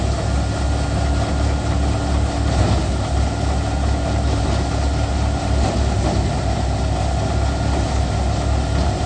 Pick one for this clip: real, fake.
real